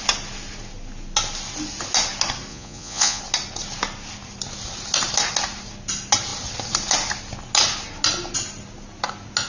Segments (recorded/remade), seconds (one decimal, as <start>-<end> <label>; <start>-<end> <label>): 0.0-2.5 recorded; 2.5-3.2 remade; 3.2-9.5 recorded